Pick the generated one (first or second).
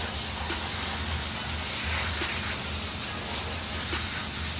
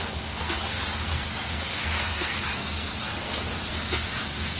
second